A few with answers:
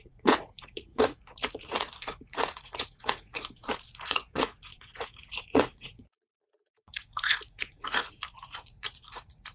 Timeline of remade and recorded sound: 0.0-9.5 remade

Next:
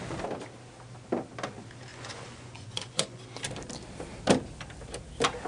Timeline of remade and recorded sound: 0.0-1.9 recorded; 1.9-3.2 remade; 3.2-5.5 recorded

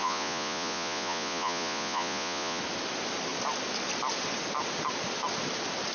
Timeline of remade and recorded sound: 0.0-2.6 remade; 2.6-5.9 recorded

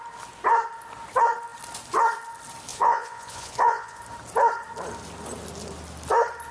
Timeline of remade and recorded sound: 0.0-2.7 recorded; 2.7-4.0 remade; 4.0-6.5 recorded

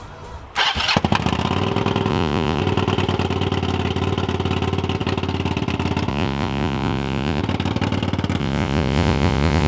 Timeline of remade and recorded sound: 0.0-2.1 recorded; 2.1-2.6 remade; 2.6-6.1 recorded; 6.1-7.4 remade; 7.4-8.4 recorded; 8.4-9.7 remade